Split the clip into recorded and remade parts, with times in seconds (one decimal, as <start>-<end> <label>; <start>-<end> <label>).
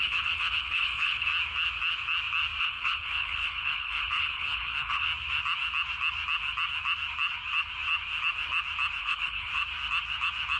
0.0-1.3 remade; 1.3-2.6 recorded; 2.6-5.1 remade; 5.1-9.0 recorded; 9.0-9.5 remade; 9.5-10.6 recorded